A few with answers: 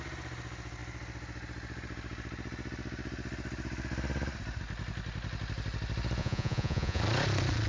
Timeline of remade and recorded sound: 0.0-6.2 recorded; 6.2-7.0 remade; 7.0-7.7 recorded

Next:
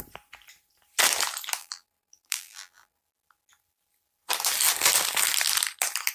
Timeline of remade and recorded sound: 0.0-1.6 recorded; 1.6-3.0 remade; 3.0-6.1 recorded

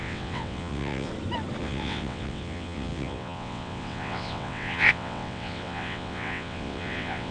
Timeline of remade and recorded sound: 0.0-1.1 remade; 1.1-1.6 recorded; 1.6-7.3 remade

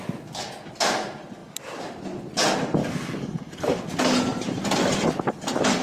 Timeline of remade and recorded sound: 0.0-2.8 recorded; 2.8-3.8 remade; 3.8-5.8 recorded

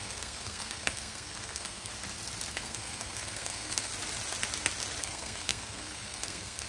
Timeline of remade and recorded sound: 0.0-1.9 remade; 1.9-2.5 recorded; 2.5-3.9 remade; 3.9-5.0 recorded; 5.0-6.7 remade

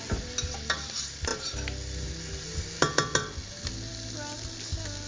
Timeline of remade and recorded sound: 0.0-5.1 recorded

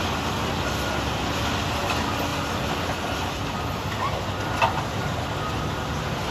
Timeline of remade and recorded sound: 0.0-6.3 recorded

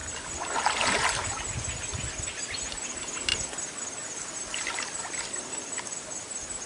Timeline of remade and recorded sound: 0.0-6.7 recorded